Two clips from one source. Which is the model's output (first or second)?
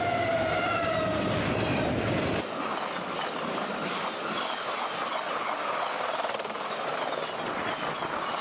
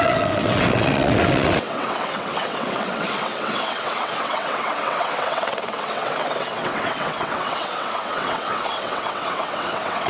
second